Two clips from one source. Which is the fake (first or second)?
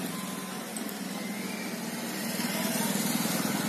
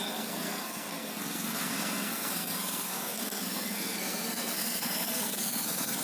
second